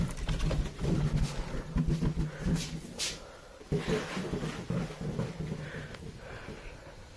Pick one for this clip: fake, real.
real